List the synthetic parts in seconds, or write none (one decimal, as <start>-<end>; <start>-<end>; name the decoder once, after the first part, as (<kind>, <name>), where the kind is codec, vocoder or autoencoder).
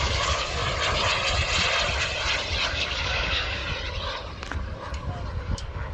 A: 0.0-0.6 (codec, DAC); 2.7-3.6; 5.4-5.9